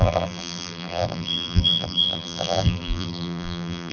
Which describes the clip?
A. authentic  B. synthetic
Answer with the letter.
B